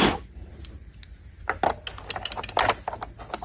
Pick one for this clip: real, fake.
real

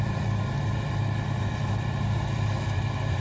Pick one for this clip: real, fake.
fake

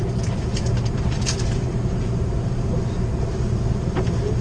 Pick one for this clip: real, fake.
fake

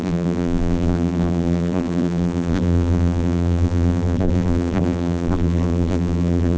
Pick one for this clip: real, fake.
fake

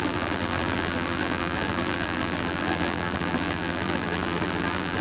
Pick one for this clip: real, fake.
fake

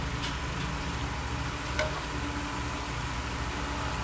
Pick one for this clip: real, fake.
real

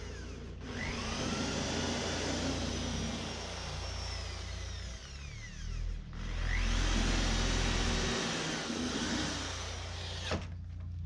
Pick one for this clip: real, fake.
real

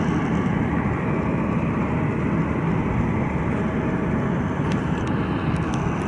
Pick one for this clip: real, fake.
real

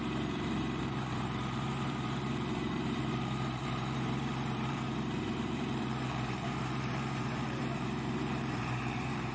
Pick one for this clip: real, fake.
fake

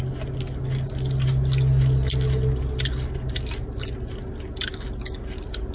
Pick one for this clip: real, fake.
real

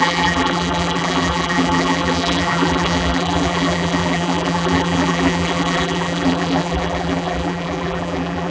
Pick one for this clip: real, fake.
fake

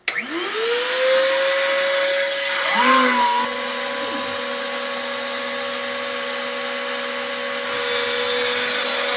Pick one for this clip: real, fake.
real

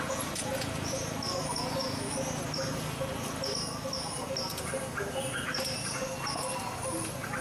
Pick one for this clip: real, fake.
real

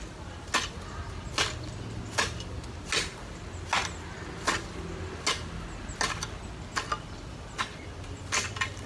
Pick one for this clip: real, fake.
real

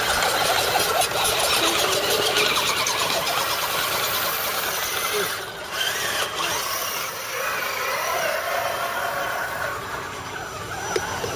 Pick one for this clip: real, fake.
real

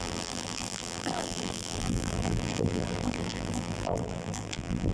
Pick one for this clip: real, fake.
fake